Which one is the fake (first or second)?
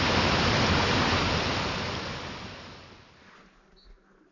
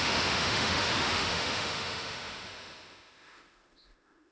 second